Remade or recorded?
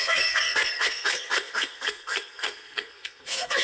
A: remade